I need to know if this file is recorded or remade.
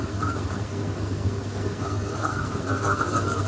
remade